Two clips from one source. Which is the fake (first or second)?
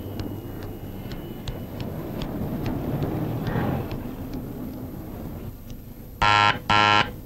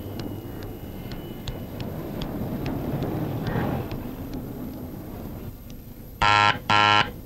second